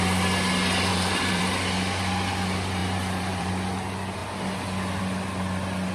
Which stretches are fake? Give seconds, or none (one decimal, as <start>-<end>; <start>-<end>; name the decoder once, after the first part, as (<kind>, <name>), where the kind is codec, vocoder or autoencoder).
0.9-1.4 (vocoder, BigVGAN v2); 2.8-3.5